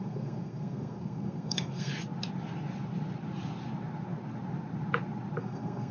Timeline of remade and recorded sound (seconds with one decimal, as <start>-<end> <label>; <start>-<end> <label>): 0.0-1.9 remade; 1.9-5.4 recorded; 5.4-5.9 remade